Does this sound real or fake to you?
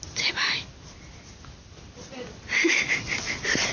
real